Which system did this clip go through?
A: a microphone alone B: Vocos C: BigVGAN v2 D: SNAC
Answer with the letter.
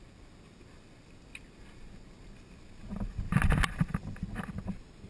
A